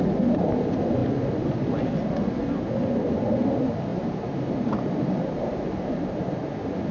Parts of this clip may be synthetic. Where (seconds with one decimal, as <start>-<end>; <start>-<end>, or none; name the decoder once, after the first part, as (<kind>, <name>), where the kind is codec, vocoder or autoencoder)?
3.9-6.5 (vocoder, BigVGAN v2)